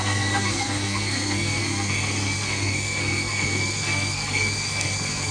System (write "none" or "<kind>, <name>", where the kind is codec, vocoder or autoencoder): codec, SNAC